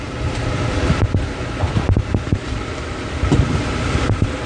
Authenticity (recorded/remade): remade